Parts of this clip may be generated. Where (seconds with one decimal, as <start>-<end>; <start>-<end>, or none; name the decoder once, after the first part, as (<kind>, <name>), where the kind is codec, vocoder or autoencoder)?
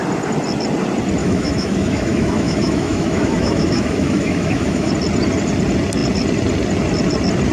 1.2-4.9 (autoencoder, DAC-VAE)